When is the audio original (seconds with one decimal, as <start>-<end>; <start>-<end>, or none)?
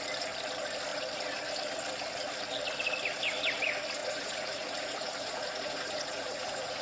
0.0-4.0